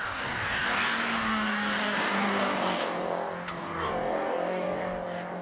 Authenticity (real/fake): fake